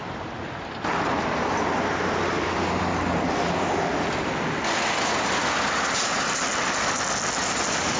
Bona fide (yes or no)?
yes